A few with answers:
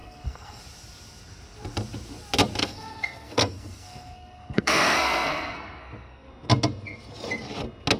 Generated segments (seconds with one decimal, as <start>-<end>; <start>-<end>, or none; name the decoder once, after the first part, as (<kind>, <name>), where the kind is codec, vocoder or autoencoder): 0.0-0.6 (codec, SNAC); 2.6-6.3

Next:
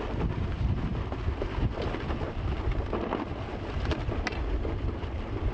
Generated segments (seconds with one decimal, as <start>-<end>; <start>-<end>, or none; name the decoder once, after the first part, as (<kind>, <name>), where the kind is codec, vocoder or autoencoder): none

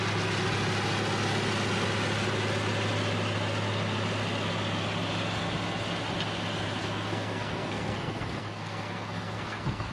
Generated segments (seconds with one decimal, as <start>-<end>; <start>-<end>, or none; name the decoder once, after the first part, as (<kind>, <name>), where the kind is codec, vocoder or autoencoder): 6.8-9.9 (codec, SNAC)

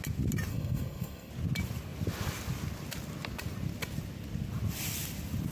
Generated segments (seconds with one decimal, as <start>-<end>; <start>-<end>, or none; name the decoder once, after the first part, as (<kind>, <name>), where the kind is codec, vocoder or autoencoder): 0.5-1.3 (codec, SNAC)

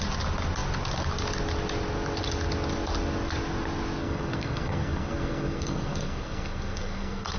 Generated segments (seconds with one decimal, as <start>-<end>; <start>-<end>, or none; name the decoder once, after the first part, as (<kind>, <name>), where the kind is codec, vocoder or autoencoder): 4.0-7.4 (codec, SNAC)